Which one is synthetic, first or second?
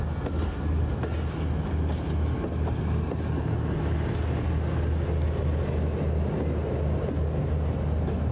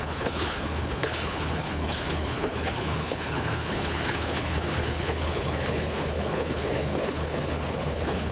second